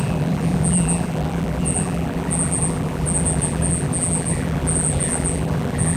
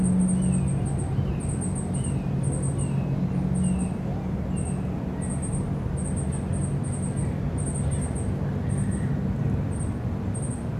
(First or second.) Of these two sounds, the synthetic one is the first